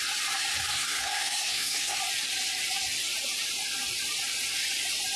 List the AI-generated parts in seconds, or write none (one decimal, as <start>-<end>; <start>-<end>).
0.7-2.0